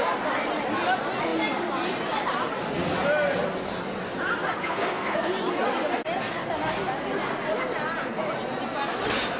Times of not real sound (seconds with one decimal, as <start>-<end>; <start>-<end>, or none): 4.6-5.3